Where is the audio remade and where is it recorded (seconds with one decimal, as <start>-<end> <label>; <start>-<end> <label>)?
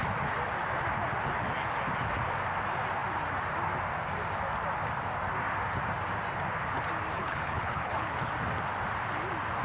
0.0-7.2 recorded; 7.2-8.3 remade; 8.3-9.6 recorded